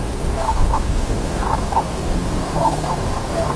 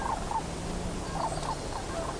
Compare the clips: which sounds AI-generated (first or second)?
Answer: first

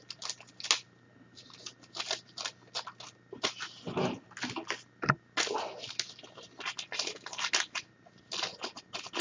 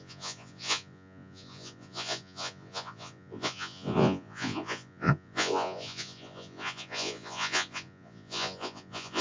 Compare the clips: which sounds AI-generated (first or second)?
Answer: second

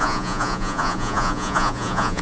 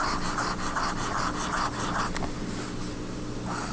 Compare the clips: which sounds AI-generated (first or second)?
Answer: first